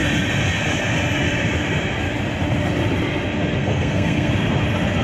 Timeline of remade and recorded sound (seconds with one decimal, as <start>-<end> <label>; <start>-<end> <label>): 0.0-3.6 recorded; 3.6-4.3 remade; 4.3-5.0 recorded